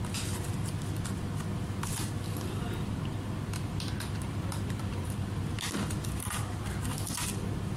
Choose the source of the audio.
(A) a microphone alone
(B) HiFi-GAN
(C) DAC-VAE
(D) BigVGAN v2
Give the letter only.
A